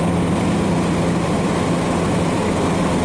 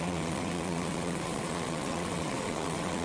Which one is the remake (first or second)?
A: second